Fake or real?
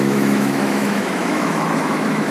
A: fake